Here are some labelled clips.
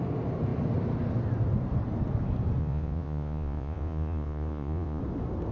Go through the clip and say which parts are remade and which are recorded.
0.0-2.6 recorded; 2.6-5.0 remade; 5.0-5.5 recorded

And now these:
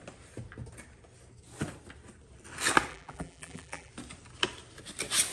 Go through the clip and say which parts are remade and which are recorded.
0.0-2.9 recorded; 2.9-3.9 remade; 3.9-5.3 recorded

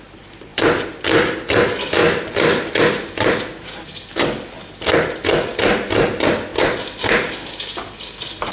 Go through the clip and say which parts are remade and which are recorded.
0.0-0.5 recorded; 0.5-1.0 remade; 1.0-2.0 recorded; 2.0-4.1 remade; 4.1-8.5 recorded

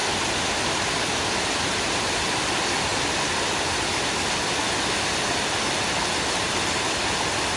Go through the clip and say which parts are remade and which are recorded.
0.0-7.6 recorded

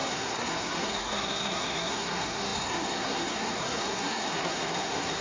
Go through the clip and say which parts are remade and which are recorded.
0.0-5.2 remade

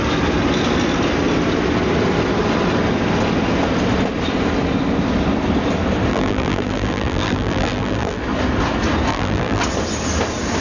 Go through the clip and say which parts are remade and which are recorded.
0.0-6.1 recorded; 6.1-8.2 remade; 8.2-9.1 recorded; 9.1-9.6 remade; 9.6-10.6 recorded